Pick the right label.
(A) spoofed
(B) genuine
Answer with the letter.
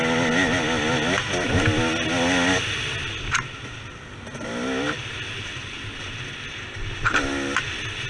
B